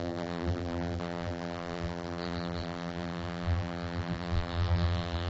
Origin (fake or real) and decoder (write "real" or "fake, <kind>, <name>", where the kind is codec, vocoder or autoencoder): fake, vocoder, BigVGAN v2